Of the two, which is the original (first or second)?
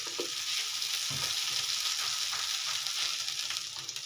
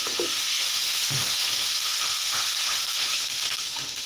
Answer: first